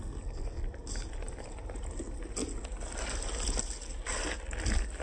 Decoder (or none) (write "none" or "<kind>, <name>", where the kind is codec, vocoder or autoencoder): none